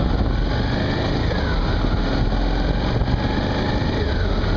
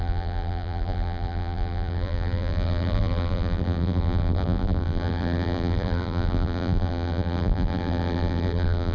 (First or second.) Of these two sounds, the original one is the first